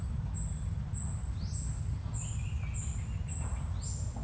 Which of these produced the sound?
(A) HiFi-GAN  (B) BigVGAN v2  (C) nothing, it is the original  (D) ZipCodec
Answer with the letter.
C